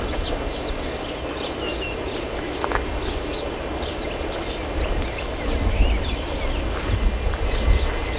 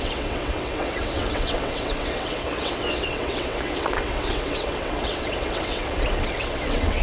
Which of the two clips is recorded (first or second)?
first